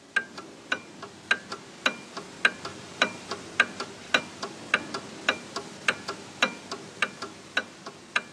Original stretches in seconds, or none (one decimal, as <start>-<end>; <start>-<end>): 0.0-2.7; 3.5-8.3